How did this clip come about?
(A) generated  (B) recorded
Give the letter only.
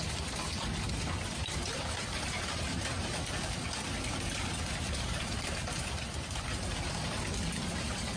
A